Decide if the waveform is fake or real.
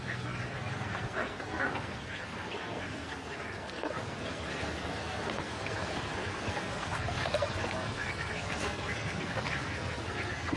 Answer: fake